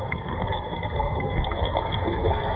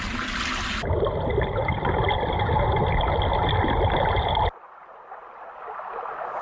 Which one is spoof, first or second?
first